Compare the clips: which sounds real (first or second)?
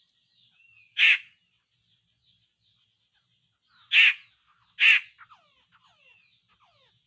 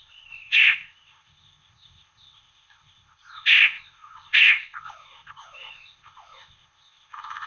first